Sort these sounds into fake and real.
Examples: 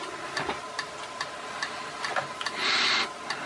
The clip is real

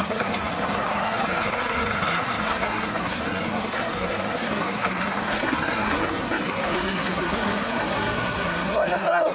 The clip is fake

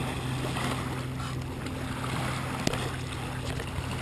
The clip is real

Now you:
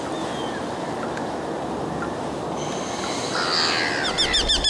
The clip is real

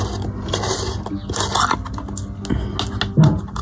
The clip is real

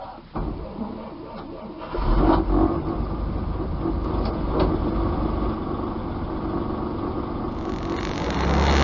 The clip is real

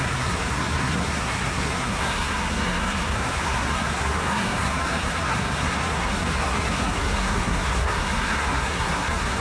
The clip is fake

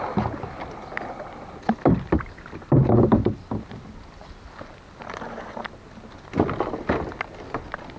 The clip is real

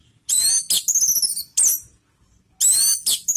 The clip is real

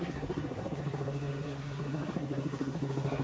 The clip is fake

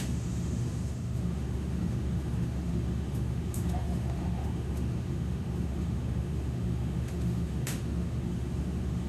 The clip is fake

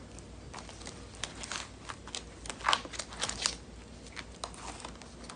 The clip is real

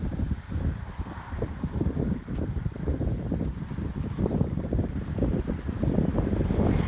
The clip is real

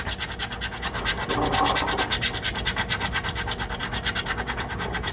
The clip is real